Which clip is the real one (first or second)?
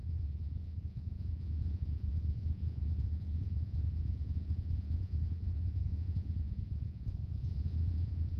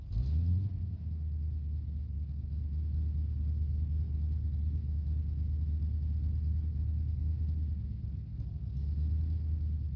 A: second